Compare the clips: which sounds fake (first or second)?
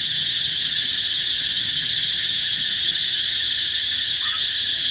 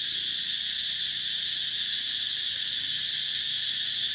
first